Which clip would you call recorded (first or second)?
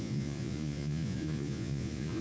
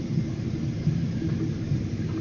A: second